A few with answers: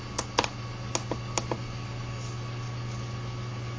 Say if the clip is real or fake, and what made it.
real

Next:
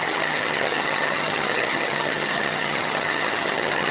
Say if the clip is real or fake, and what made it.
fake, vocoder, HiFi-GAN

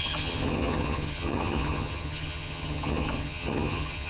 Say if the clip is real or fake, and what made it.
fake, vocoder, HiFi-GAN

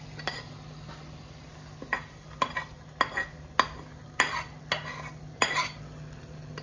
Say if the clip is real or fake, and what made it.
real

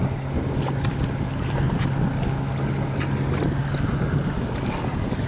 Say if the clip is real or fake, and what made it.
real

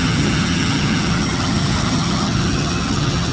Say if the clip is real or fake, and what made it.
fake, vocoder, HiFi-GAN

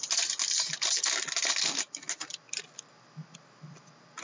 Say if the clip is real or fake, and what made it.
real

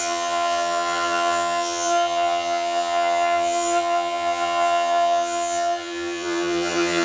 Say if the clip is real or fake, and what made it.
fake, vocoder, HiFi-GAN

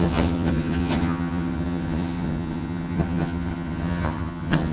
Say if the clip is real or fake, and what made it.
fake, vocoder, HiFi-GAN